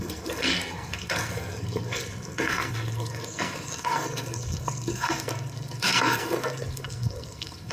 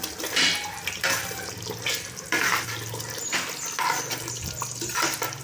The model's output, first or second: first